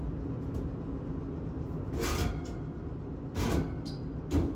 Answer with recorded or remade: recorded